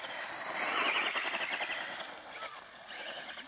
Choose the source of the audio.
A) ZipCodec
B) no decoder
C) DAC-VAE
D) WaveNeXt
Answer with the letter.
B